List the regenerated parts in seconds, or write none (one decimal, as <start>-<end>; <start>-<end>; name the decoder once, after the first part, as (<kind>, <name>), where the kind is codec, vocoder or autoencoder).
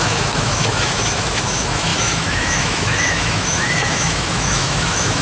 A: 0.0-5.2 (autoencoder, DAC-VAE)